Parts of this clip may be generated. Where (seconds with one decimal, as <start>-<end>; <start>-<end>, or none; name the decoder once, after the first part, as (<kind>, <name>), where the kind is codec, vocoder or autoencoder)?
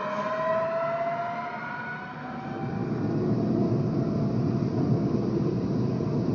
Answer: none